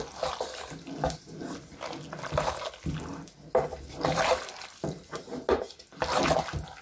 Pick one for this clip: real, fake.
real